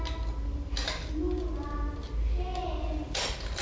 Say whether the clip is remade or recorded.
recorded